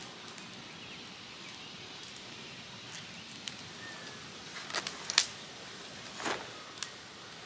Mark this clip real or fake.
real